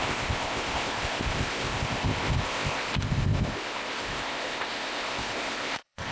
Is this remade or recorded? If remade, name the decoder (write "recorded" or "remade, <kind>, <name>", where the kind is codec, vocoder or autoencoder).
remade, codec, ZipCodec